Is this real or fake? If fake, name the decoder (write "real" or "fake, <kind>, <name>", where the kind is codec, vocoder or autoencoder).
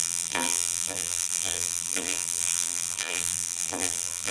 fake, vocoder, BigVGAN v2